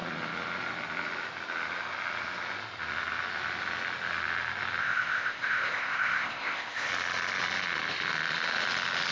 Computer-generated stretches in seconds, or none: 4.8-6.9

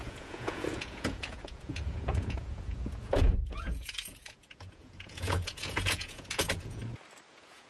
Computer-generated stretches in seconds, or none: 0.0-6.8; 7.3-7.7

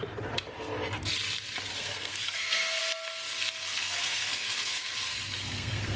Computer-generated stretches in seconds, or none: 1.8-2.8; 3.4-6.0

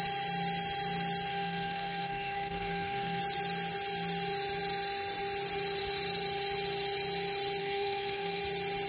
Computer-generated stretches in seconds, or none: 1.3-3.2; 7.6-8.4

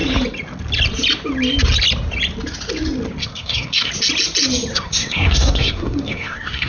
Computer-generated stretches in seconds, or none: 3.2-3.9; 4.7-6.7